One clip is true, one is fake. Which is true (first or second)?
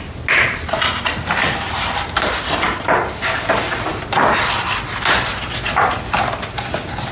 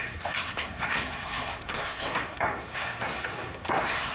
first